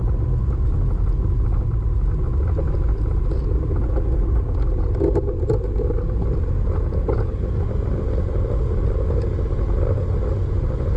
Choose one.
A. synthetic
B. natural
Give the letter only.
B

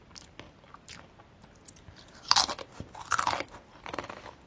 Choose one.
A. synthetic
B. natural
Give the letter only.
B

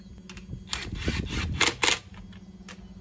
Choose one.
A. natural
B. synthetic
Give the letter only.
A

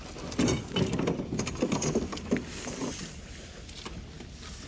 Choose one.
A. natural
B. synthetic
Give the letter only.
A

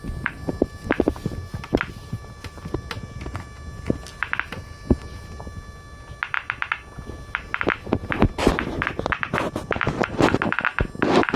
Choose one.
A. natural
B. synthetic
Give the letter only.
A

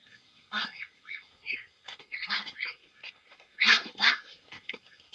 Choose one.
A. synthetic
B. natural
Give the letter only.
A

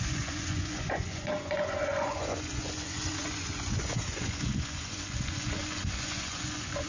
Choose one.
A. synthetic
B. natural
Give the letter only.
A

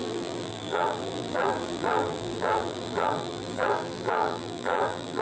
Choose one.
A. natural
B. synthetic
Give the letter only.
B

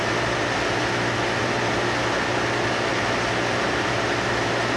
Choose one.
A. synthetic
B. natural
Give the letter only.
B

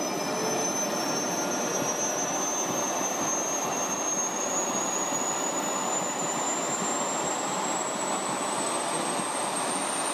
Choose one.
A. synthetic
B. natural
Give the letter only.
B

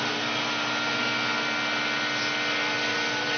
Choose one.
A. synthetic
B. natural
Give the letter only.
B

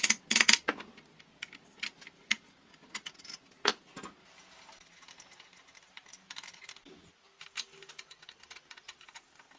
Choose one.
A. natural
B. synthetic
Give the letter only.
A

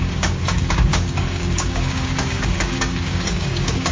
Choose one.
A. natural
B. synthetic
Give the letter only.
B